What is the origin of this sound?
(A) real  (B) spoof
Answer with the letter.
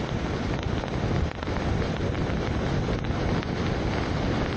A